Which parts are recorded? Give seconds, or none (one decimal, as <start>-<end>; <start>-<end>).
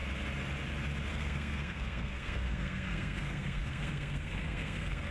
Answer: 0.0-1.1